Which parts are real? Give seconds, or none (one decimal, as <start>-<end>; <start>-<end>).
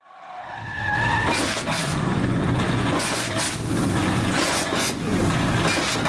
0.0-1.8; 3.3-4.0; 5.2-6.1